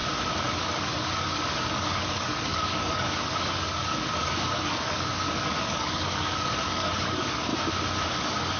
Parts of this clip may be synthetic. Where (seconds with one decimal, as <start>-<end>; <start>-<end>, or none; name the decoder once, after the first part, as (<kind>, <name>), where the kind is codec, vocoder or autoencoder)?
1.0-7.5 (codec, DAC); 8.1-8.6